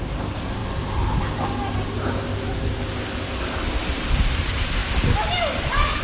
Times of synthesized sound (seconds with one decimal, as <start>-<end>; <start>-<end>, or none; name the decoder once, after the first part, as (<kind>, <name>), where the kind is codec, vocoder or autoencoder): 0.0-0.6 (vocoder, BigVGAN v2); 4.2-4.8; 5.3-6.0